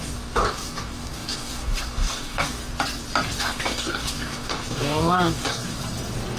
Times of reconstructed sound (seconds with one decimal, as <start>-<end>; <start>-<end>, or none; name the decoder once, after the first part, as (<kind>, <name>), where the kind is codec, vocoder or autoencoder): 0.0-2.6 (codec, DAC); 3.4-5.8